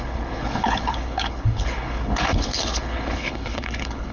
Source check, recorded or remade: remade